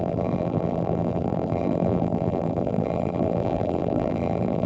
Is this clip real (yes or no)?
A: no